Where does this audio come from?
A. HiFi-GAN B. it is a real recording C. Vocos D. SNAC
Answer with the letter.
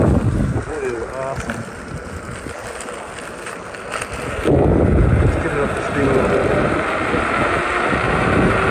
B